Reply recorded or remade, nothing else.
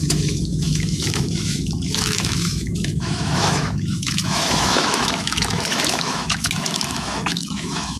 remade